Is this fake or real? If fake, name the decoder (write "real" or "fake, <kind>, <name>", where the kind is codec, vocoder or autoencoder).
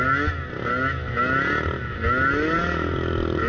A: real